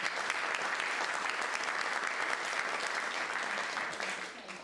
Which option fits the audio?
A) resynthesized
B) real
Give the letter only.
B